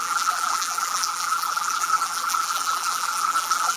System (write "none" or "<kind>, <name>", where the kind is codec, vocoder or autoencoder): vocoder, BigVGAN v2